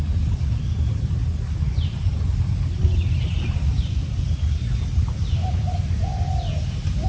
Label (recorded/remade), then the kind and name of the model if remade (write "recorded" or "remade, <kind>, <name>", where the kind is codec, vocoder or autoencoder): recorded